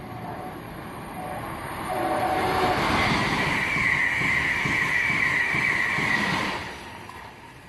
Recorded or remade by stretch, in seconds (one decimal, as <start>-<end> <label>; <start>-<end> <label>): 0.0-7.7 recorded